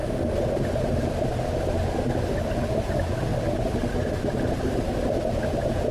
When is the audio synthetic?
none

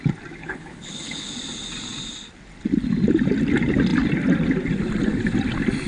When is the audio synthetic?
0.4-1.3